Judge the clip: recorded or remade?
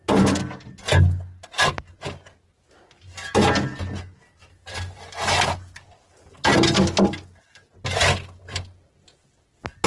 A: recorded